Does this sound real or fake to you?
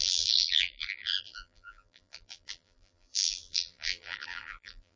fake